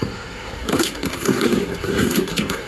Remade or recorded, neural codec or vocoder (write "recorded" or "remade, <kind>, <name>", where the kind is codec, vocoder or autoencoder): remade, codec, SNAC